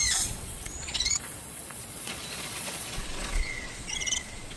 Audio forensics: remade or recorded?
remade